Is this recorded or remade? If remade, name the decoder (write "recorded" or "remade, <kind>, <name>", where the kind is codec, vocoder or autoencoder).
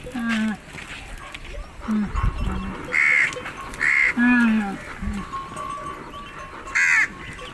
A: recorded